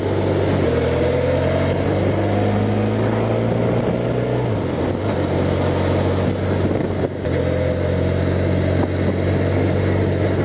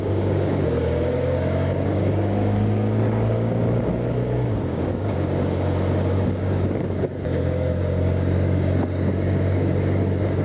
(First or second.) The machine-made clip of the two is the second